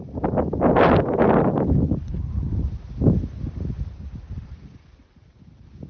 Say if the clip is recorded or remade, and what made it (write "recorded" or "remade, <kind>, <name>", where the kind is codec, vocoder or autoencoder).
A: recorded